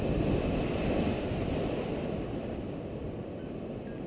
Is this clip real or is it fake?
real